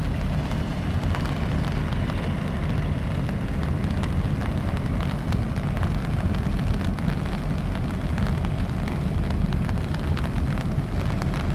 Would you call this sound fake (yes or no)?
no